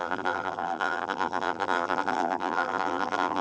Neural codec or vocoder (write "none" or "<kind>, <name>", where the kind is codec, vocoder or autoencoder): vocoder, BigVGAN v2